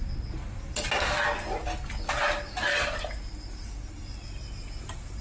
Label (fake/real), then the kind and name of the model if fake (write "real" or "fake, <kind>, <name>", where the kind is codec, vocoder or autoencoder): real